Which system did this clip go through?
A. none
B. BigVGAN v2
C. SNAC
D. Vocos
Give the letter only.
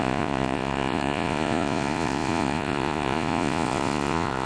D